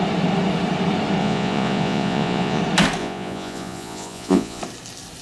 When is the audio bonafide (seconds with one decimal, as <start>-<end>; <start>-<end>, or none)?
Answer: 0.0-1.2; 2.6-3.0; 4.6-5.2